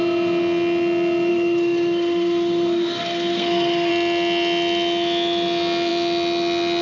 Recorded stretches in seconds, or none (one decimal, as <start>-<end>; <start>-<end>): 0.0-1.3; 3.9-6.8